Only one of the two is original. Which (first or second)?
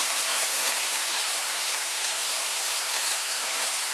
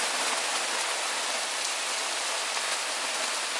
second